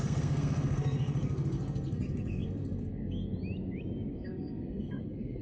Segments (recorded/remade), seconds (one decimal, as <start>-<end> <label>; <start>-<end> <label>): 0.0-3.3 remade; 3.3-4.1 recorded; 4.1-5.4 remade